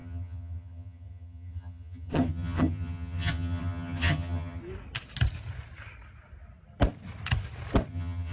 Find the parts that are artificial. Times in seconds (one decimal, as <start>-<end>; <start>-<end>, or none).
0.0-4.6; 7.9-8.3